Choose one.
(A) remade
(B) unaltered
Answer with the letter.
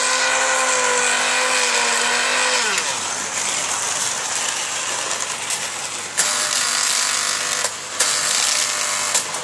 B